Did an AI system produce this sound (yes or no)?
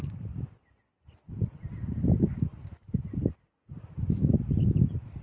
no